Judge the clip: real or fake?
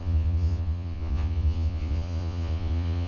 fake